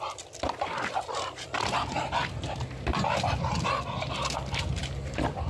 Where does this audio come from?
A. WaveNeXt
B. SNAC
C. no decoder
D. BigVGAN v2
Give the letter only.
C